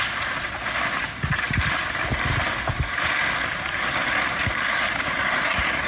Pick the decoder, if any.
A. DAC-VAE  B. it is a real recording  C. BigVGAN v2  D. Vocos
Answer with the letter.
B